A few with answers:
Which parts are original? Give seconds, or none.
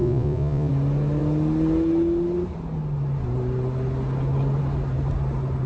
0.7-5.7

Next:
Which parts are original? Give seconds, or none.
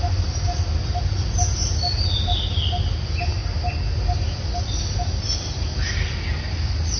0.0-7.0